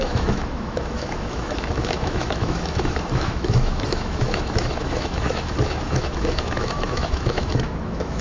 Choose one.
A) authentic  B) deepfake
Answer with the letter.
B